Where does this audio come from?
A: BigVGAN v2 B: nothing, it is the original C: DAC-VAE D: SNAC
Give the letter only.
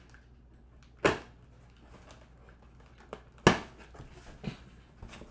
B